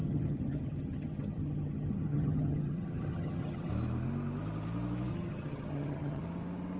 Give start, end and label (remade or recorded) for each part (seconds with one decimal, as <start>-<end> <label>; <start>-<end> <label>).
0.0-3.7 remade; 3.7-5.1 recorded; 5.1-6.2 remade; 6.2-6.8 recorded

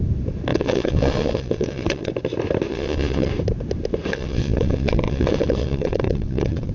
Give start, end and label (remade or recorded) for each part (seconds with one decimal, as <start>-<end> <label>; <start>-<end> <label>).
0.0-0.5 recorded; 0.5-2.1 remade; 2.1-2.7 recorded; 2.7-3.3 remade; 3.3-4.1 recorded; 4.1-6.7 remade

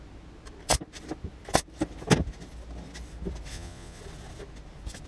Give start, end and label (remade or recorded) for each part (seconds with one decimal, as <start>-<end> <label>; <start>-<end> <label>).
0.0-3.5 recorded; 3.5-4.0 remade; 4.0-5.1 recorded

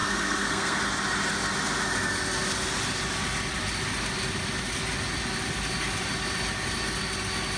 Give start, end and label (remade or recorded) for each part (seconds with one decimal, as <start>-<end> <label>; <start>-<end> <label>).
0.0-0.8 remade; 0.8-7.6 recorded